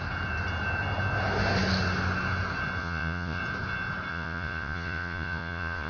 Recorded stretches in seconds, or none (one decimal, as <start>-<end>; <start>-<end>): 0.0-2.8; 3.4-4.1